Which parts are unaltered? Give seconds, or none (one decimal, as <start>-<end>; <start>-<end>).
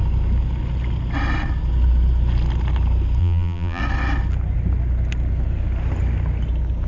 0.0-3.2; 3.8-6.9